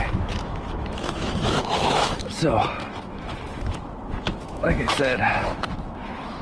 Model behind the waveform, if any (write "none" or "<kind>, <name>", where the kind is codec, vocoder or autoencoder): autoencoder, DAC-VAE